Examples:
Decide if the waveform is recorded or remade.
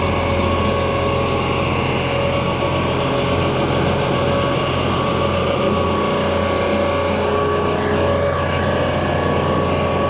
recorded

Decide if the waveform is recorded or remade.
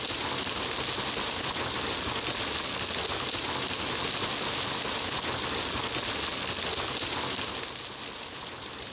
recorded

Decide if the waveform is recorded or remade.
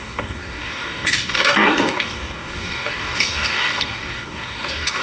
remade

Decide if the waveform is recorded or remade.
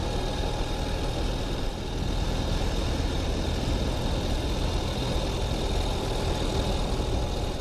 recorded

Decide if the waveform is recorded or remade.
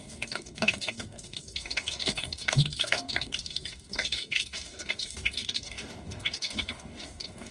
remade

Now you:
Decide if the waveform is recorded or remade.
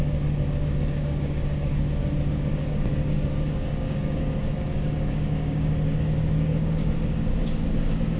remade